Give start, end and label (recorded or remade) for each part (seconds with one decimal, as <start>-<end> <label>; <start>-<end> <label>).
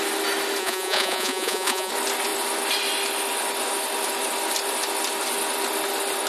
0.0-0.6 recorded; 0.6-1.9 remade; 1.9-6.3 recorded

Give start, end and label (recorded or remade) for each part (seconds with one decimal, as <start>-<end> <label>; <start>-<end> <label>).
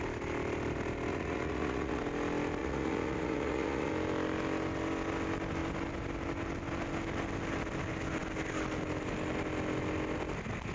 0.0-1.1 recorded; 1.1-2.0 remade; 2.0-2.6 recorded; 2.6-3.9 remade; 3.9-10.7 recorded